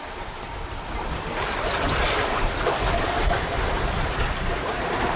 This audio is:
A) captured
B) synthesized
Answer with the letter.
A